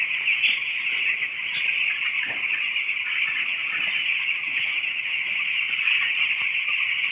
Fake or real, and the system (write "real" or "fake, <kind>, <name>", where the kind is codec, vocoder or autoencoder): real